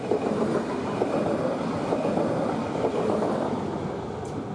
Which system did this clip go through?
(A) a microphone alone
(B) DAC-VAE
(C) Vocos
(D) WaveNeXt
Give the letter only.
A